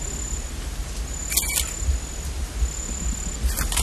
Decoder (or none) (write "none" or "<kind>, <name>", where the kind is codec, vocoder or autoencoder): none